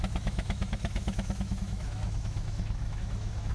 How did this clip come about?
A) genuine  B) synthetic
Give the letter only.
B